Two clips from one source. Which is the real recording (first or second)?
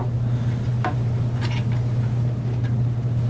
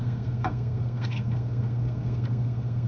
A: first